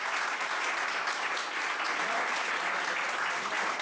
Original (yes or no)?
yes